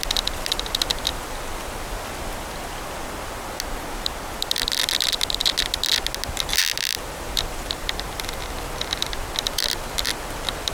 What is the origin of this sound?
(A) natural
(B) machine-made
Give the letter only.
A